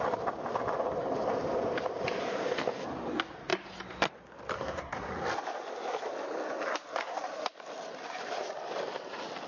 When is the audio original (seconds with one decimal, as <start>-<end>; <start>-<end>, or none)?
0.0-4.5; 5.1-9.5